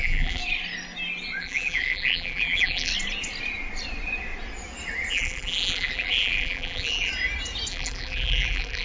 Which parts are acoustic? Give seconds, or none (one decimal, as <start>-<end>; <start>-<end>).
0.4-1.4; 2.9-5.1; 7.1-7.7